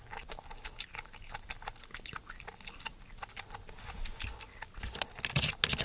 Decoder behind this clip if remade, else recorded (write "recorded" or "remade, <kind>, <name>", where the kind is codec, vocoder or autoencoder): recorded